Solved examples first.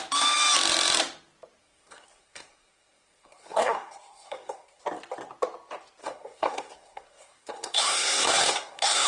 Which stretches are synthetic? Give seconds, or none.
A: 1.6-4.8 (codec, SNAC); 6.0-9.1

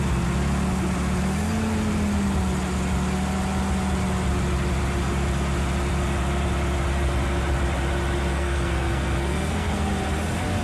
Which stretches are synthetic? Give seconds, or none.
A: 8.3-9.9 (codec, SNAC)

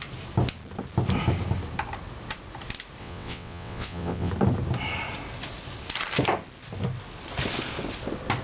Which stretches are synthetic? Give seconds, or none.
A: 3.0-4.3 (vocoder, WaveNeXt)

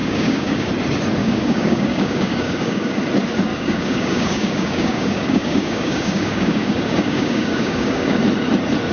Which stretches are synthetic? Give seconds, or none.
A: 0.0-0.7 (codec, DAC); 1.2-3.0; 3.5-8.2

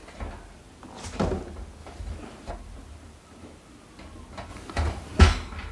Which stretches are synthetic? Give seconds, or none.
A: 1.8-2.5 (vocoder, BigVGAN v2); 4.5-5.2

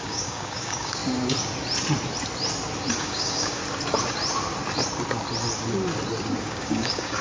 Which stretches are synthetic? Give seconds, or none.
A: 0.0-1.0 (codec, DAC); 3.0-3.6; 6.4-7.2